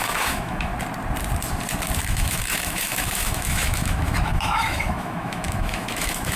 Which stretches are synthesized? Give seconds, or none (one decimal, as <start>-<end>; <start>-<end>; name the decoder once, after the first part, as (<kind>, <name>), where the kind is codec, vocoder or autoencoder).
0.0-0.7 (autoencoder, DAC-VAE); 2.0-6.4